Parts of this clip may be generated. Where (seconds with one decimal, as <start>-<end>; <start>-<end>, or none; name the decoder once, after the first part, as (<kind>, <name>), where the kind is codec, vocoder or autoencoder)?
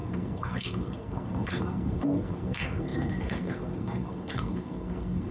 0.0-5.3 (codec, SNAC)